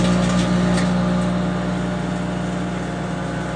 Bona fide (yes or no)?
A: yes